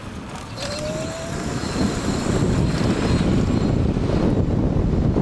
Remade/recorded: recorded